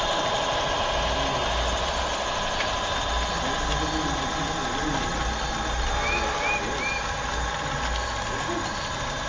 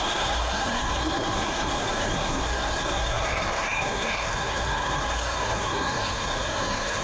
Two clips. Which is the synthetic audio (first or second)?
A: second